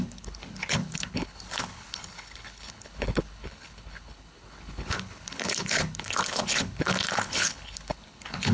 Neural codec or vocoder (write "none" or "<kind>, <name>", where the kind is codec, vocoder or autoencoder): codec, HILCodec